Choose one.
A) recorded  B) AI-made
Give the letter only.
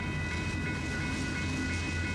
A